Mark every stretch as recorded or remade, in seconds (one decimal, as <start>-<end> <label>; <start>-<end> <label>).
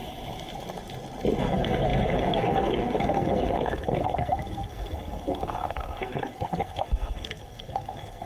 0.0-1.4 recorded; 1.4-8.3 remade